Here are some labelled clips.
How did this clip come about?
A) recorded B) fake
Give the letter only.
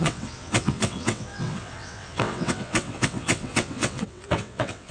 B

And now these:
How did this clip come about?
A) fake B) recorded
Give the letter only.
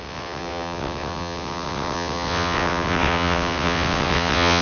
A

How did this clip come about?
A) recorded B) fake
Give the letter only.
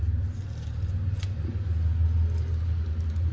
A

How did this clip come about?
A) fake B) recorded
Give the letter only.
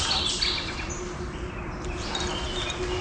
B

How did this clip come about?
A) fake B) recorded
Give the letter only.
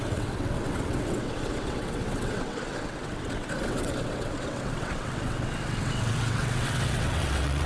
A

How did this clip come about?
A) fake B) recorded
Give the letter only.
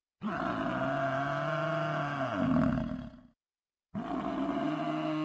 B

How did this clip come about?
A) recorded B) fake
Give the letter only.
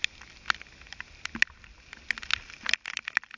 A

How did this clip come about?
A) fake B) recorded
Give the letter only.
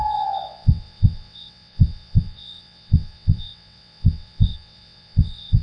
A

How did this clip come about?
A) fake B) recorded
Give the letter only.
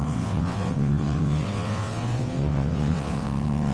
A